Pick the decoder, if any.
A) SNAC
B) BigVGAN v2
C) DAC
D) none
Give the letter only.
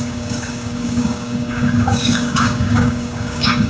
C